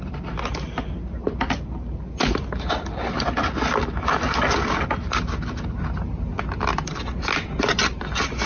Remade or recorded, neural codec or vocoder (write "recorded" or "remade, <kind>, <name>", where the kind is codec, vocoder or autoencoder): recorded